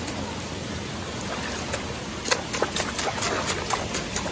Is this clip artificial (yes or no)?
no